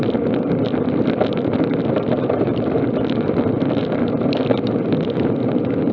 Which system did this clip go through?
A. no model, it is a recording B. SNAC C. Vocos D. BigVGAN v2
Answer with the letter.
D